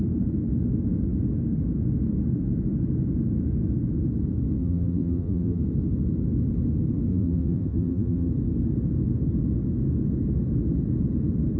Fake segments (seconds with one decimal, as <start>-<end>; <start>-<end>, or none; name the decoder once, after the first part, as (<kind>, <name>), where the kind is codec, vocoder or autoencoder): 4.6-5.6 (vocoder, BigVGAN v2); 7.1-8.3